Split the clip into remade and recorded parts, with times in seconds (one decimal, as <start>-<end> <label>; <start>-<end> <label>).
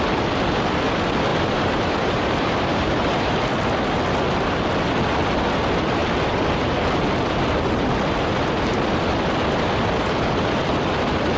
0.0-1.3 recorded; 1.3-3.4 remade; 3.4-11.4 recorded